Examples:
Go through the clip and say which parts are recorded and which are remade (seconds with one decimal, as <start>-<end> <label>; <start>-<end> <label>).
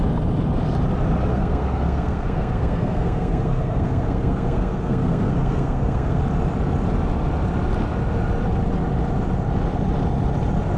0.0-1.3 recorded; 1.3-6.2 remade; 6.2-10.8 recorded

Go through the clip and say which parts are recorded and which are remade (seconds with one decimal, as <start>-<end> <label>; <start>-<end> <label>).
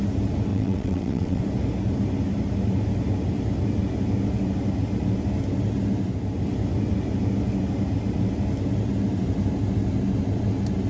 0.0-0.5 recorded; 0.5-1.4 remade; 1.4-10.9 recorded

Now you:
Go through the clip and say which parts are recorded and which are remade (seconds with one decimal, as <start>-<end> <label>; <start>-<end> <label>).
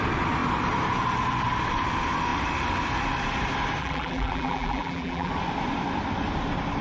0.0-3.8 recorded; 3.8-5.3 remade; 5.3-6.8 recorded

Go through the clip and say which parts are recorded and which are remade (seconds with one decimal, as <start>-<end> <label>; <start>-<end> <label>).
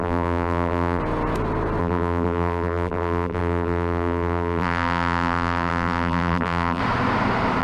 0.0-1.0 remade; 1.0-1.8 recorded; 1.8-6.8 remade; 6.8-7.6 recorded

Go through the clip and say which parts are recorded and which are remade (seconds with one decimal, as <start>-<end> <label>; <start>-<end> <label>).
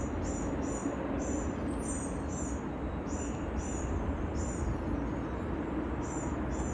0.0-0.8 recorded; 0.8-4.8 remade; 4.8-6.7 recorded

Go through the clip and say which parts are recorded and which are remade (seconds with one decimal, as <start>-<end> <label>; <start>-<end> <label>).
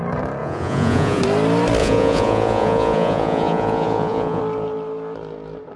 0.0-0.4 recorded; 0.4-1.2 remade; 1.2-1.8 recorded; 1.8-4.4 remade; 4.4-5.8 recorded